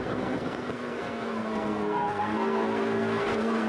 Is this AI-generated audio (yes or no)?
yes